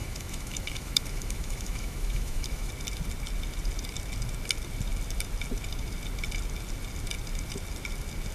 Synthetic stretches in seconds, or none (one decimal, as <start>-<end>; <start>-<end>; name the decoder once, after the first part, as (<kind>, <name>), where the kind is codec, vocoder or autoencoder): 0.0-2.7 (autoencoder, DAC-VAE)